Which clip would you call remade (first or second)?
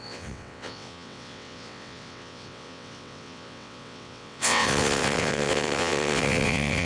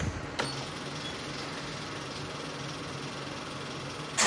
first